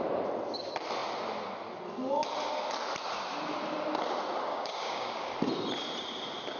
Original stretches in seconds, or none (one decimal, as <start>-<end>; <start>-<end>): 0.0-4.5; 5.3-6.6